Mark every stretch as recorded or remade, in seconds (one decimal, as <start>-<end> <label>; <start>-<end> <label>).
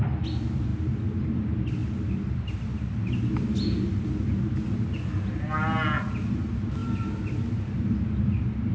0.0-8.7 recorded